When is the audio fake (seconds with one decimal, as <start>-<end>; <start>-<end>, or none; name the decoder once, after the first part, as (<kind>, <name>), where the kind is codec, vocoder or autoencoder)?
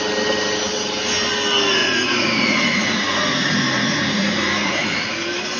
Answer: 1.8-5.0 (vocoder, Vocos)